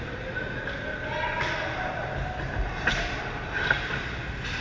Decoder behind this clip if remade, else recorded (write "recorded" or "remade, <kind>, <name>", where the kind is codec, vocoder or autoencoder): recorded